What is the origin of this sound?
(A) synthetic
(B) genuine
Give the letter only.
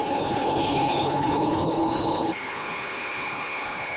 A